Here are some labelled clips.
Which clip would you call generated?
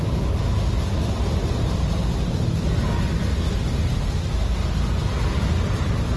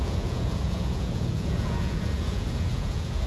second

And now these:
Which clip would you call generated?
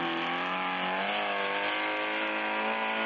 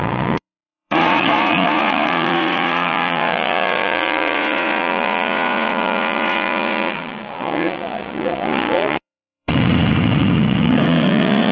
second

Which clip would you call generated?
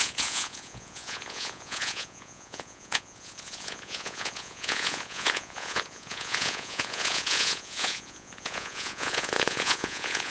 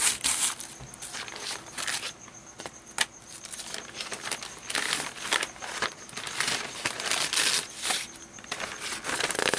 first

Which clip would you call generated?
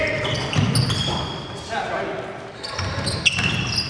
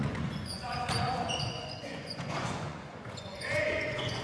second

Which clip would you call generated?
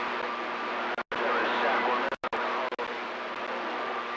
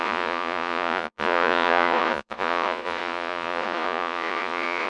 second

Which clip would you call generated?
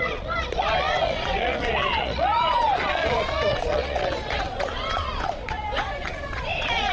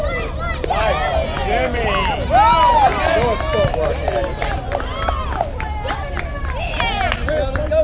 first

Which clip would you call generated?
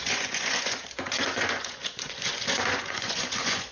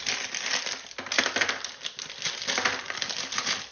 first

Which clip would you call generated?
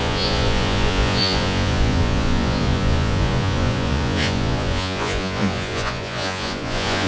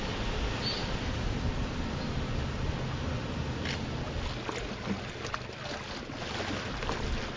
first